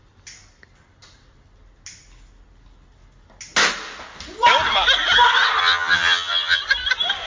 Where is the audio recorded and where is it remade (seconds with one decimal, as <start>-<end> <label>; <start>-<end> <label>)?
0.0-5.6 recorded; 5.6-6.6 remade; 6.6-7.3 recorded